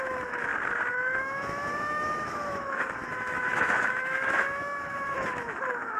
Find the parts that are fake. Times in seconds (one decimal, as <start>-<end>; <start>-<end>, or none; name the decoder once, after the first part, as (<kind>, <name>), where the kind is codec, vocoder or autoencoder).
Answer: 0.0-0.5 (autoencoder, DAC-VAE); 1.2-6.0